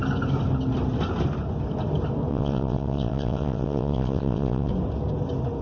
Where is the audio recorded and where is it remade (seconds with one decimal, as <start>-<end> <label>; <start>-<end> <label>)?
0.0-2.3 recorded; 2.3-4.7 remade; 4.7-5.6 recorded

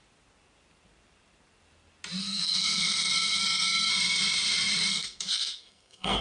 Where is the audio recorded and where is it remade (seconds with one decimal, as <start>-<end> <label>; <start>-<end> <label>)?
0.0-2.2 recorded; 2.2-3.9 remade; 3.9-4.9 recorded; 4.9-6.2 remade

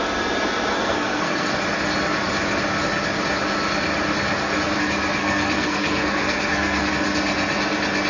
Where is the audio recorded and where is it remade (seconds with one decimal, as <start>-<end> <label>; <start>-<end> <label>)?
0.0-0.7 recorded; 0.7-1.6 remade; 1.6-5.2 recorded; 5.2-6.9 remade; 6.9-8.1 recorded

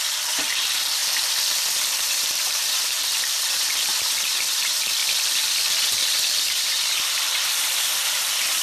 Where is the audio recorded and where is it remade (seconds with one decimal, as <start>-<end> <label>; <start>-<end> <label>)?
0.0-1.0 remade; 1.0-2.1 recorded; 2.1-5.0 remade; 5.0-6.4 recorded; 6.4-8.6 remade

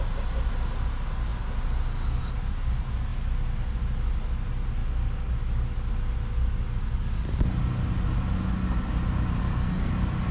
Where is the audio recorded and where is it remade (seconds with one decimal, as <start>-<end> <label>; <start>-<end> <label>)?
0.0-9.4 recorded; 9.4-9.9 remade; 9.9-10.3 recorded

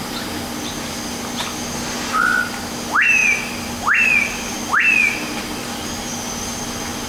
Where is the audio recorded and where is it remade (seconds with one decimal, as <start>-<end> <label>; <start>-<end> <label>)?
0.0-7.1 recorded

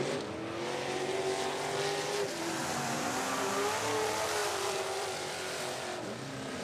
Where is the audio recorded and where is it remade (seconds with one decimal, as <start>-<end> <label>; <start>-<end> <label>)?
0.0-2.6 recorded; 2.6-3.2 remade; 3.2-4.4 recorded; 4.4-5.3 remade; 5.3-6.6 recorded

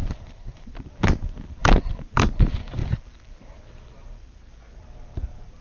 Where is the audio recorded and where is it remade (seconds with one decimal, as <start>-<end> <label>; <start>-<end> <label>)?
0.0-2.8 remade; 2.8-3.3 recorded; 3.3-5.6 remade